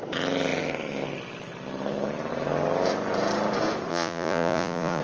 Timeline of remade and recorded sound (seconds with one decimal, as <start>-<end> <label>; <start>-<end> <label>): 0.0-3.9 recorded; 3.9-5.0 remade